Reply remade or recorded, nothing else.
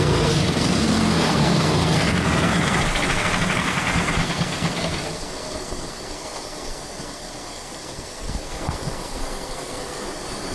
remade